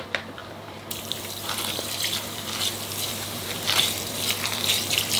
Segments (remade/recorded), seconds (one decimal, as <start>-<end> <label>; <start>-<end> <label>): 0.0-5.2 remade